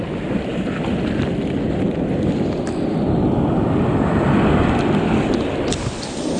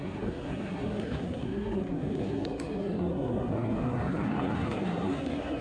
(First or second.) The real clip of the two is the first